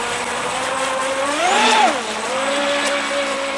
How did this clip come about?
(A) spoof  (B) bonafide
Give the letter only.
B